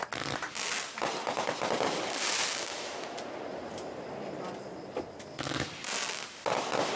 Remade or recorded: recorded